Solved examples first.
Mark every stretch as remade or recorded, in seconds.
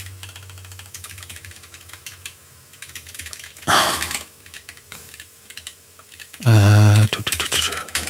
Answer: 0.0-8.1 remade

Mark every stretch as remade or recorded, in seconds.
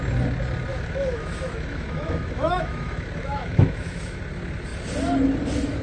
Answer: 0.0-0.7 recorded; 0.7-4.2 remade; 4.2-5.8 recorded